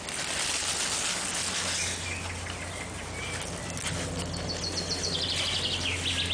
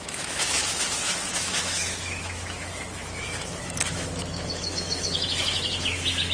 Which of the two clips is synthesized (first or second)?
second